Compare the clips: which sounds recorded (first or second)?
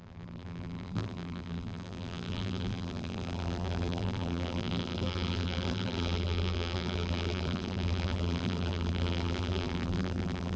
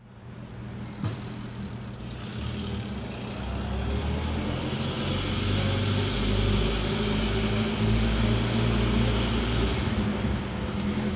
second